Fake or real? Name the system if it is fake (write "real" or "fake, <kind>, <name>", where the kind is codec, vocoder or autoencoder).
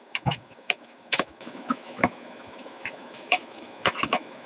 fake, autoencoder, DAC-VAE